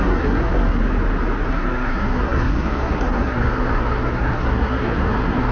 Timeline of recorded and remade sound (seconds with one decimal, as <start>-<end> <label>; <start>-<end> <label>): 0.0-0.8 remade; 0.8-1.5 recorded; 1.5-5.5 remade